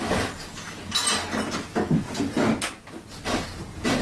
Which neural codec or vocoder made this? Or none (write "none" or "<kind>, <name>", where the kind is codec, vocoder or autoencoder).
none